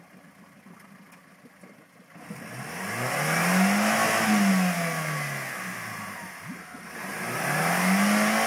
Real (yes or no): yes